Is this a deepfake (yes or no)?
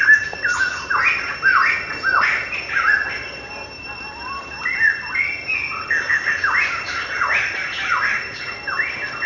no